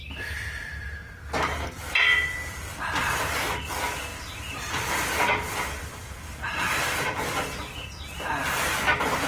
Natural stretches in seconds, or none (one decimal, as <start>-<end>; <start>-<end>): 0.0-4.1; 7.2-9.3